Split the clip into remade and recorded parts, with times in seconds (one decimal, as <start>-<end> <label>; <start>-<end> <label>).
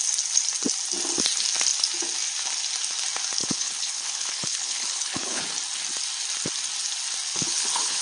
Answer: 0.0-3.4 recorded; 3.4-5.4 remade; 5.4-7.3 recorded; 7.3-8.0 remade